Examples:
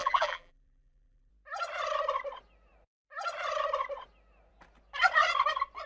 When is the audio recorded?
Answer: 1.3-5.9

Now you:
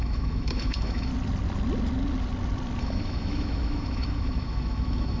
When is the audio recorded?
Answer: 1.1-2.8

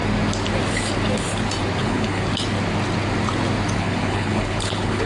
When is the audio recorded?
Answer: 0.0-1.8; 2.3-3.8

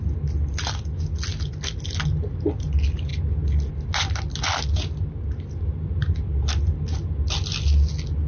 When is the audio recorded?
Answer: 0.0-8.3

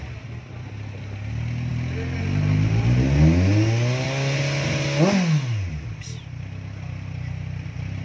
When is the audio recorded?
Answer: 0.0-8.0